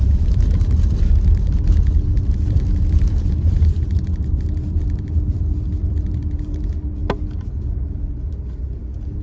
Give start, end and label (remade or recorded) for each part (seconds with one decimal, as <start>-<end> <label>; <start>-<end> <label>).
0.0-3.5 recorded; 3.5-6.6 remade; 6.6-9.2 recorded